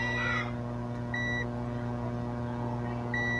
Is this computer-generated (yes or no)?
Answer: no